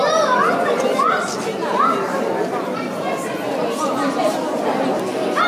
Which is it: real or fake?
real